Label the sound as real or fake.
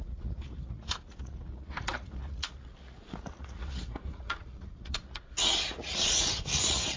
fake